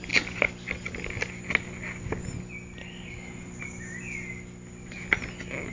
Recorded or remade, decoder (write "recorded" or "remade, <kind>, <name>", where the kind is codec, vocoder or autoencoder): recorded